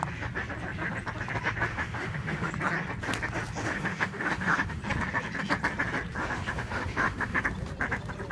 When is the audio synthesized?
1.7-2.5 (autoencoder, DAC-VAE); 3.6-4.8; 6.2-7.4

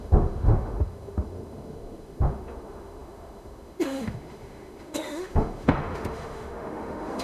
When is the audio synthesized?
0.0-7.2 (autoencoder, DAC-VAE)

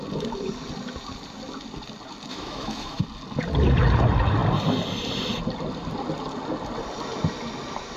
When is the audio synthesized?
2.3-3.0 (autoencoder, DAC-VAE)

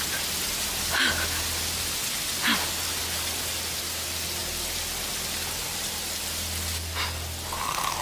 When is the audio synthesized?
none

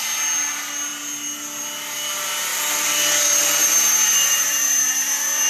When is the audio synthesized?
none

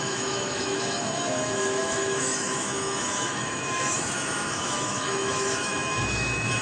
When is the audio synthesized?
0.0-6.6 (autoencoder, DAC-VAE)

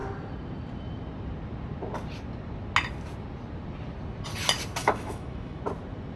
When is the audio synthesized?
4.8-5.6 (autoencoder, DAC-VAE)

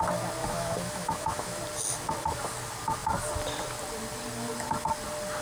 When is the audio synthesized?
0.4-1.6 (autoencoder, DAC-VAE)